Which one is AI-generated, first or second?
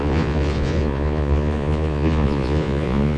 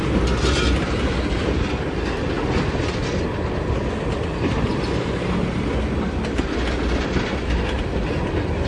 first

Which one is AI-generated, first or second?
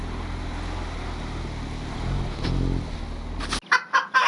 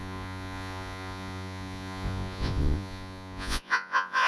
second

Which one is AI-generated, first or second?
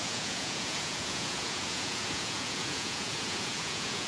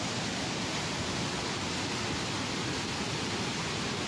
first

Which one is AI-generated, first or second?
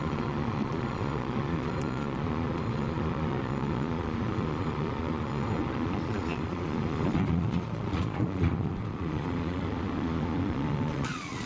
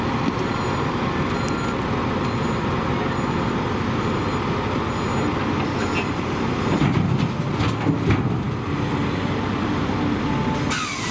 first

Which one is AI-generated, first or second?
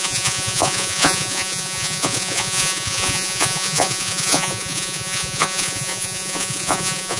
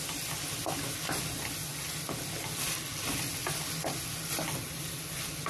first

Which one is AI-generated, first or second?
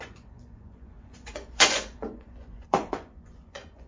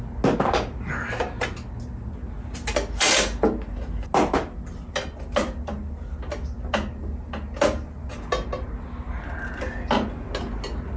first